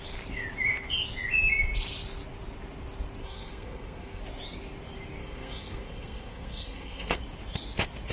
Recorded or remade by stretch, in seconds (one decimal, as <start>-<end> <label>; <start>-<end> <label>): 0.0-3.2 recorded; 3.2-4.2 remade; 4.2-5.2 recorded; 5.2-7.2 remade; 7.2-8.1 recorded